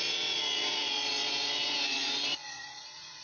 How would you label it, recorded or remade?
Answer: remade